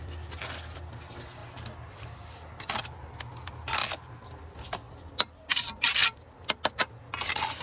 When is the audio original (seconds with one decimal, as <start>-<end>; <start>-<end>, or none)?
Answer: 0.0-7.6